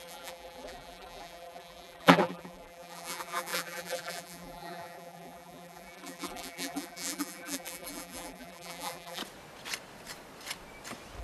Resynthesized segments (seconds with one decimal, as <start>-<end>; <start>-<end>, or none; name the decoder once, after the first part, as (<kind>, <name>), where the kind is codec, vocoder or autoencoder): 0.0-9.2 (vocoder, BigVGAN v2)